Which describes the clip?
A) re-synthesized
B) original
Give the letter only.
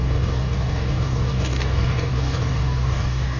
A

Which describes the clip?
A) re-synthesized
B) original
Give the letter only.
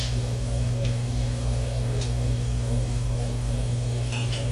A